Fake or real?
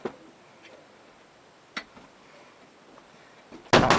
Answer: real